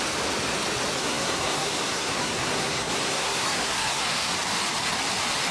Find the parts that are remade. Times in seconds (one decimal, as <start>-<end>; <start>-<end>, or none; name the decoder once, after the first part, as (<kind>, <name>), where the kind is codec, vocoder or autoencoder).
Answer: 1.0-4.3 (codec, SNAC)